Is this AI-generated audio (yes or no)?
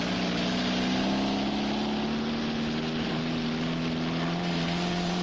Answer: no